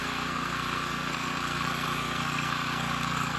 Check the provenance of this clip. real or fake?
fake